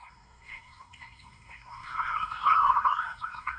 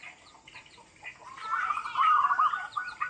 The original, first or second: second